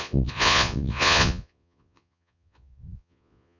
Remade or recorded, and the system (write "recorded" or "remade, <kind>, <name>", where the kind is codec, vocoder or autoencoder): remade, vocoder, Vocos